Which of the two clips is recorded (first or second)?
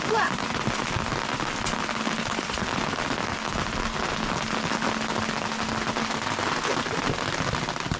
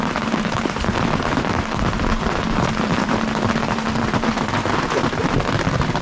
first